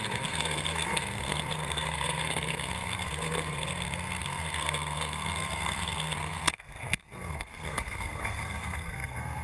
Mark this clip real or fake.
fake